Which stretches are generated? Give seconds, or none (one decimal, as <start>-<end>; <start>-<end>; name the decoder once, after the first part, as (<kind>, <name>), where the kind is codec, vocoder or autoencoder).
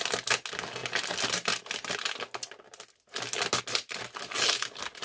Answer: none